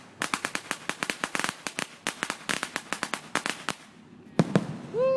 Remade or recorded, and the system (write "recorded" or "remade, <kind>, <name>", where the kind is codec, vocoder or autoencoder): recorded